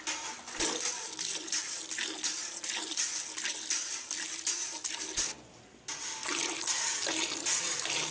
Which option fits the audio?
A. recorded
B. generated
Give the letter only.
A